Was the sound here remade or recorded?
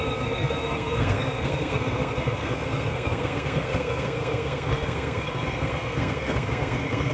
remade